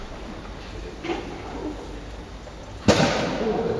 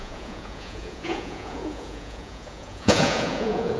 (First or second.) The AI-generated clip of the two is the second